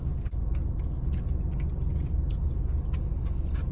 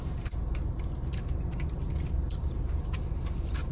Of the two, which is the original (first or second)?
first